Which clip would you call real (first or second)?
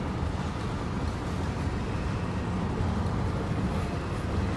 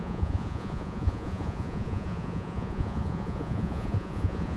first